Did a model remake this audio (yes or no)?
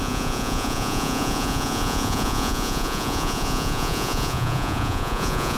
yes